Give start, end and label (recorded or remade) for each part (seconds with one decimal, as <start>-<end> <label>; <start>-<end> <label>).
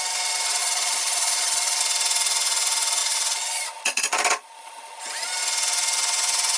0.0-0.6 recorded; 0.6-1.8 remade; 1.8-3.0 recorded; 3.0-5.0 remade; 5.0-6.6 recorded